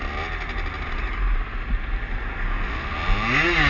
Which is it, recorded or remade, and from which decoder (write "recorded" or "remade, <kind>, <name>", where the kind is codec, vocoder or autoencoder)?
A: recorded